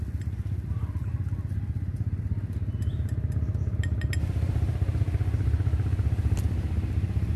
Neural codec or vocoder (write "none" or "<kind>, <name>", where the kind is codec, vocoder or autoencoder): none